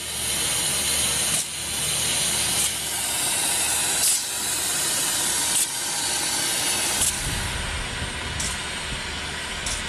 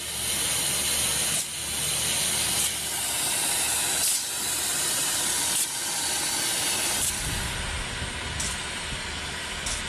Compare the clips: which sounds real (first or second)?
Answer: first